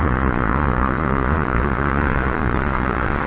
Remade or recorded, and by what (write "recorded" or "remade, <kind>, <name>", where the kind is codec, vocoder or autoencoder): remade, vocoder, Vocos